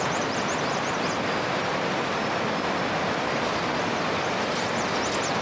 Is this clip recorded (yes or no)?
yes